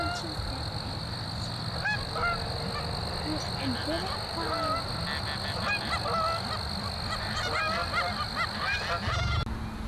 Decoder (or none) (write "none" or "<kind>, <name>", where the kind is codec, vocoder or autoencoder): none